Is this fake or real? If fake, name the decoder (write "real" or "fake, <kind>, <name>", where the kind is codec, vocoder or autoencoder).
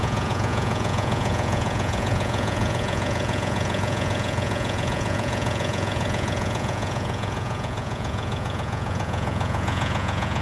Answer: fake, vocoder, Vocos